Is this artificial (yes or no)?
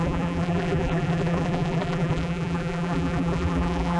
yes